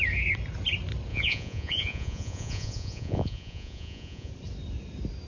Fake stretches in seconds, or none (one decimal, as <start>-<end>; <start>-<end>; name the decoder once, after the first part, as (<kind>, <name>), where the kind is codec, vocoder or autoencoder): 1.1-4.3 (vocoder, Vocos)

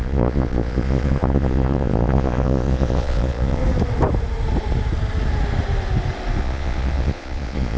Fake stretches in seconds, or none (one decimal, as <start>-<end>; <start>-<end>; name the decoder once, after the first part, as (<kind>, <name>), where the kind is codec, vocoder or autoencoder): 0.0-3.6 (vocoder, Vocos); 6.4-7.8

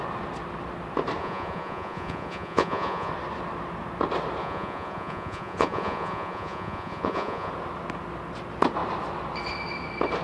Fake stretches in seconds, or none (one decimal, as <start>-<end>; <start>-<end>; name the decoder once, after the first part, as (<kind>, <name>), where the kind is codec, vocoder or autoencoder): 1.2-3.1 (vocoder, Vocos); 4.4-7.5

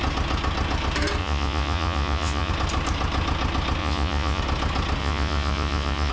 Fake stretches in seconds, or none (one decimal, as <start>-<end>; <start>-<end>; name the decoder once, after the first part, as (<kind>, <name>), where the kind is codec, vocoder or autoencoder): 1.2-2.5 (vocoder, Vocos); 3.8-4.4; 5.0-6.1

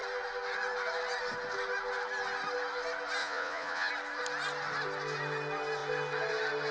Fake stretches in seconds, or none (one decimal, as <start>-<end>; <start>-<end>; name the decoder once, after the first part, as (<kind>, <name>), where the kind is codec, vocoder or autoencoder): 3.2-3.9 (vocoder, Vocos)

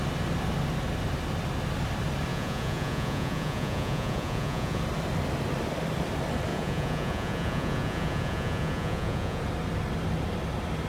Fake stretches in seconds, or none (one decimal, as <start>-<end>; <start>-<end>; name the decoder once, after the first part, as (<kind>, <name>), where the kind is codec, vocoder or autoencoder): 2.3-4.8 (vocoder, Vocos); 6.5-9.4

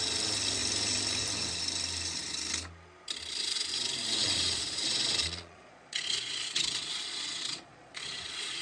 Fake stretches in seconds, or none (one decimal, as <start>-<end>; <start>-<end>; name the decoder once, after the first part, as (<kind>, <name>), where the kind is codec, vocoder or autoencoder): 4.2-8.6 (vocoder, Vocos)